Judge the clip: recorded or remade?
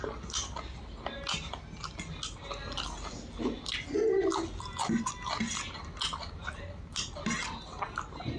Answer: recorded